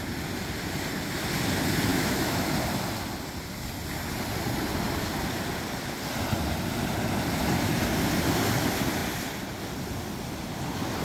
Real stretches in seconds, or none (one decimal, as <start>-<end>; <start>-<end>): 0.0-1.9; 2.5-11.0